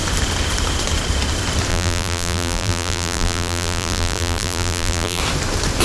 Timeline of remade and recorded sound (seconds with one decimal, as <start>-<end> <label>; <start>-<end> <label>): 0.0-1.7 recorded; 1.7-5.2 remade; 5.2-5.8 recorded